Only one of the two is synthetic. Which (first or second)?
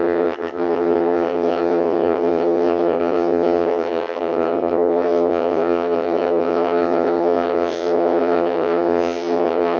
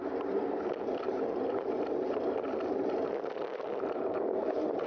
first